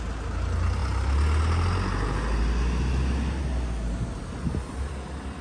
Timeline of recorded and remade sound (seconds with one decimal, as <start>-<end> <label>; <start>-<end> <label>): 0.0-5.4 recorded